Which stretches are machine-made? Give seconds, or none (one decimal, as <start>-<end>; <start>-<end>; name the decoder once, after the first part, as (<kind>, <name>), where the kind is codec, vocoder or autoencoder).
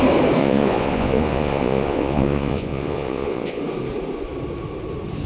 0.4-3.6 (vocoder, Vocos)